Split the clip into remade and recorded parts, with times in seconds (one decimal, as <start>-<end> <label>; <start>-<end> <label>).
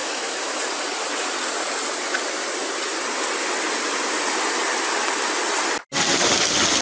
0.0-0.6 remade; 0.6-6.8 recorded